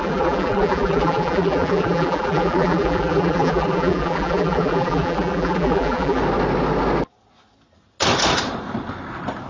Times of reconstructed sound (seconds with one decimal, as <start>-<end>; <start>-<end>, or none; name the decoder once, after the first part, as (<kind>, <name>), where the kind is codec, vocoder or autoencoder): 0.0-6.2 (vocoder, BigVGAN v2)